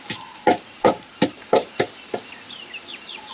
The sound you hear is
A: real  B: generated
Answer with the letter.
B